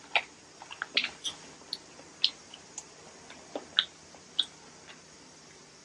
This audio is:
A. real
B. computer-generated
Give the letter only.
A